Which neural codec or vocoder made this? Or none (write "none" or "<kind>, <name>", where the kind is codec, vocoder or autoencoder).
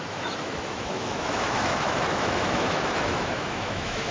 autoencoder, DAC-VAE